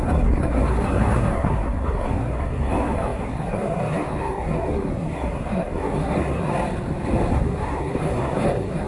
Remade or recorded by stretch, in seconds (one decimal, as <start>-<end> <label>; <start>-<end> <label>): 0.0-6.5 remade; 6.5-7.3 recorded; 7.3-8.9 remade